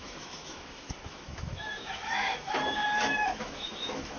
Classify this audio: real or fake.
fake